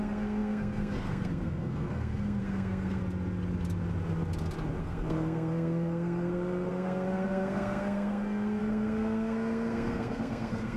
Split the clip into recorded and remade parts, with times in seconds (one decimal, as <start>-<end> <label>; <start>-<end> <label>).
0.0-3.0 remade; 3.0-4.8 recorded; 4.8-10.8 remade